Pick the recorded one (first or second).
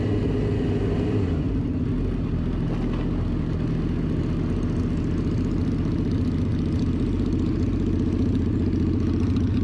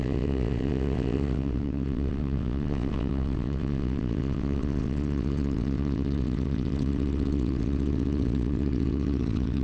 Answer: first